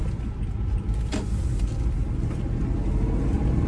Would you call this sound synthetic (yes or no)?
no